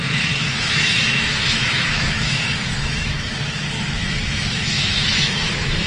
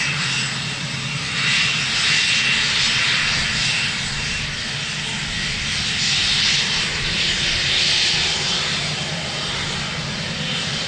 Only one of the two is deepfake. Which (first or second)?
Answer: first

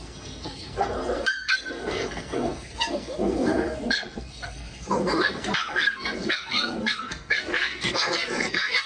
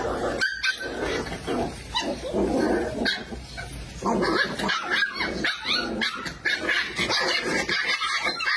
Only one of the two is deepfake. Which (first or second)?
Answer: first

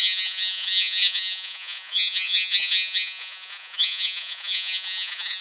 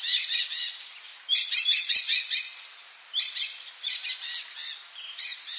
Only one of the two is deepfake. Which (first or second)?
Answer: first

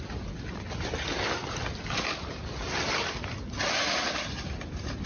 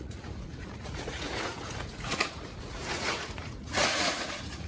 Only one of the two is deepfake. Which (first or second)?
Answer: second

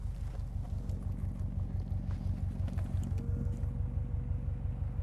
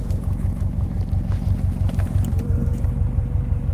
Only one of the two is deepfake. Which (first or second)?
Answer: second